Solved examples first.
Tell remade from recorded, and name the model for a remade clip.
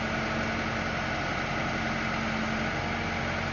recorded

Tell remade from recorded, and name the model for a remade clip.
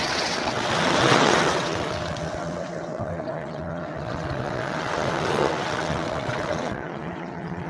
remade, vocoder, WaveNeXt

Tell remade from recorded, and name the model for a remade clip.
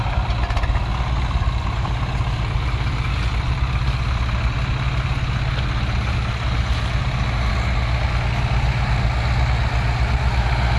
recorded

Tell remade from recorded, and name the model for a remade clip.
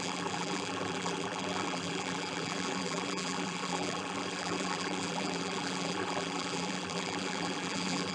remade, vocoder, BigVGAN v2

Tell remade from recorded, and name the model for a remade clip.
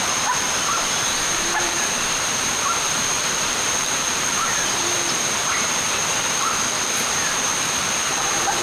remade, vocoder, BigVGAN v2